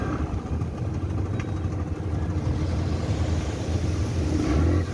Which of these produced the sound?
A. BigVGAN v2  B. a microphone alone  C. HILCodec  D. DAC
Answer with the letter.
B